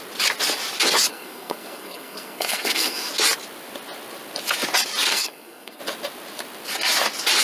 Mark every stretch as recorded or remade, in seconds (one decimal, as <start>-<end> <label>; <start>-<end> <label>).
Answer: 0.0-1.1 recorded; 1.1-3.1 remade; 3.1-5.1 recorded; 5.1-5.8 remade; 5.8-7.4 recorded